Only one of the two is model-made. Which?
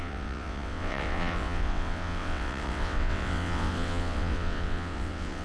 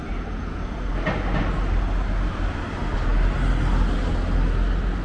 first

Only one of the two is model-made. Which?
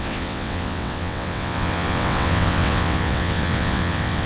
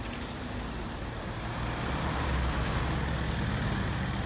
first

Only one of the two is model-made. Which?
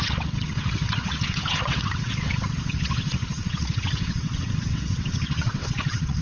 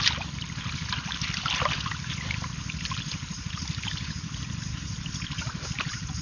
first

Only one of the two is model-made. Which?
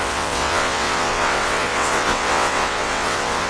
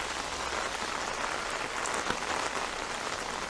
first